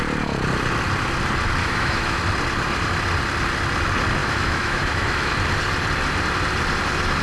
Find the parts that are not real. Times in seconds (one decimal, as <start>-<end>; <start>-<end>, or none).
1.6-2.2; 4.2-5.3